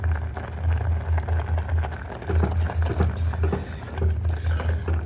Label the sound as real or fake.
real